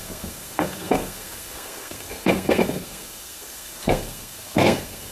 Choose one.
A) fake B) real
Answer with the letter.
A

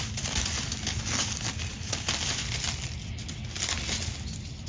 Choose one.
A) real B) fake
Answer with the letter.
A